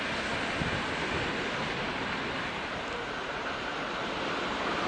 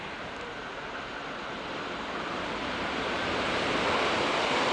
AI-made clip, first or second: first